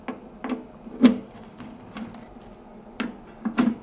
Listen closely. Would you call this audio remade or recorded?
recorded